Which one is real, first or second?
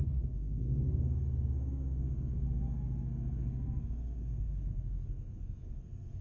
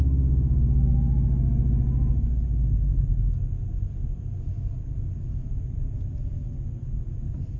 second